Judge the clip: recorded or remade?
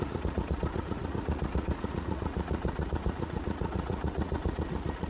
remade